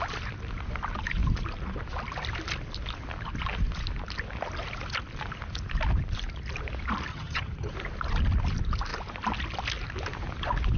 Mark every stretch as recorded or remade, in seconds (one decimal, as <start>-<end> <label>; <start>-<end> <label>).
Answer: 0.0-7.1 recorded; 7.1-7.7 remade; 7.7-10.8 recorded